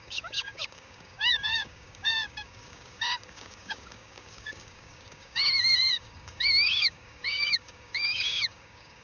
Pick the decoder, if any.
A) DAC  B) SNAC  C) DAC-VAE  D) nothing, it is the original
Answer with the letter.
A